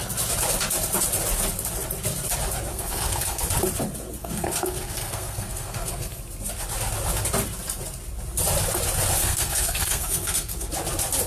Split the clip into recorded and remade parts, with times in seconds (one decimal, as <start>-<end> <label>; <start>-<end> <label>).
0.0-2.7 recorded; 2.7-3.4 remade; 3.4-4.2 recorded; 4.2-6.2 remade; 6.2-9.2 recorded; 9.2-10.7 remade; 10.7-11.3 recorded